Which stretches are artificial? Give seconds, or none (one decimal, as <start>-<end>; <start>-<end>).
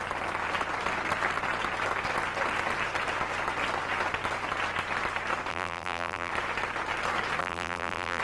5.5-6.3; 7.4-8.2